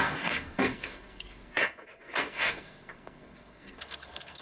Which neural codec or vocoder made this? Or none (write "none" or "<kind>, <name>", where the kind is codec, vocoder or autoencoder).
codec, SNAC